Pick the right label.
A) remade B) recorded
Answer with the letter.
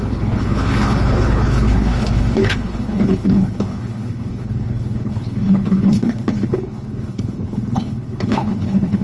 A